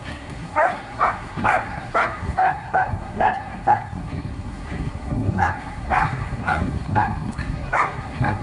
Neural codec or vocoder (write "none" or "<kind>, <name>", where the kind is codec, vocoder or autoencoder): codec, SNAC